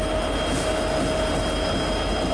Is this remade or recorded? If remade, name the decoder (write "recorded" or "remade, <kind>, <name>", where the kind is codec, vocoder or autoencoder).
recorded